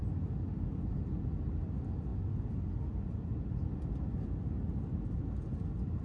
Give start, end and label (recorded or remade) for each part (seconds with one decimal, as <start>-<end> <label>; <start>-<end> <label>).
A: 0.0-6.0 recorded